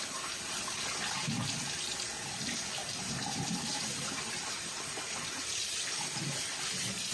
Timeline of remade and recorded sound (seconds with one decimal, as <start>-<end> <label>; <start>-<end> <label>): 0.0-2.8 recorded; 2.8-5.5 remade; 5.5-7.1 recorded